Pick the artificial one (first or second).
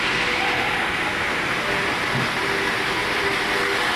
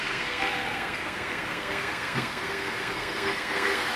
second